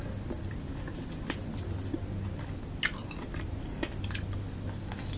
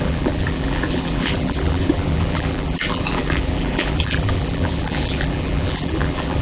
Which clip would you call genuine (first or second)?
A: first